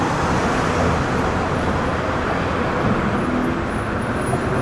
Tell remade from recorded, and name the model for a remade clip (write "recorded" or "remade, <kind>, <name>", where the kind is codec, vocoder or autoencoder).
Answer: recorded